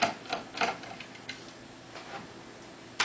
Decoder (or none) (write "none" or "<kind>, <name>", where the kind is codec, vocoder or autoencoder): none